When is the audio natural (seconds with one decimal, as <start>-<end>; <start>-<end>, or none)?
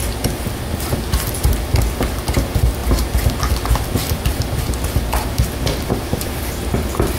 0.0-7.2